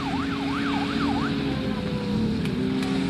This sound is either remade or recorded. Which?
recorded